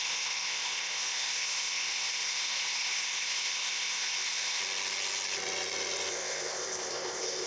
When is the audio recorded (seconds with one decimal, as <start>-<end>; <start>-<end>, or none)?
4.6-6.1